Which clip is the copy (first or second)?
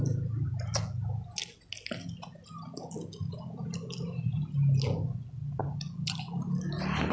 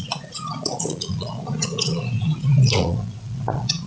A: second